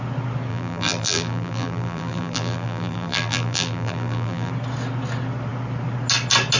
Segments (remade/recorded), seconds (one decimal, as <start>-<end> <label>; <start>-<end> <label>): 0.0-0.5 recorded; 0.5-4.5 remade; 4.5-6.6 recorded